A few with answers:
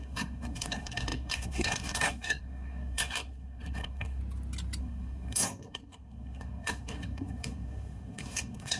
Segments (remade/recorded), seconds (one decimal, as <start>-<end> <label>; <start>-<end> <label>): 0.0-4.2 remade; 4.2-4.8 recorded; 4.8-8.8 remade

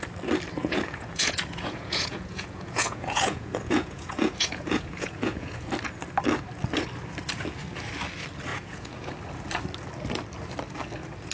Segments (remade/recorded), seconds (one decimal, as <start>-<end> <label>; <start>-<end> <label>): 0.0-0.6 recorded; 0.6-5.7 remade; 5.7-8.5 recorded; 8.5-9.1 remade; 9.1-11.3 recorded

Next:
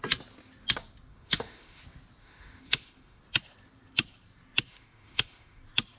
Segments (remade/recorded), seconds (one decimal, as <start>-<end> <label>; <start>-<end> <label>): 0.0-1.1 recorded; 1.1-1.8 remade; 1.8-2.2 recorded; 2.2-3.2 remade; 3.2-4.7 recorded; 4.7-5.6 remade; 5.6-6.0 recorded